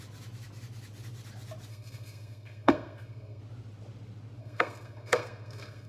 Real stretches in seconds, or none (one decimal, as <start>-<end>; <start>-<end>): 0.0-1.7; 3.4-4.4